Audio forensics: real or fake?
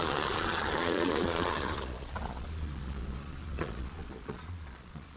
fake